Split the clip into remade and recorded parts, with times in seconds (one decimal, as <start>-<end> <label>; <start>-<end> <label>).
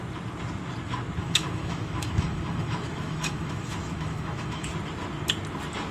0.0-1.2 recorded; 1.2-4.7 remade; 4.7-5.9 recorded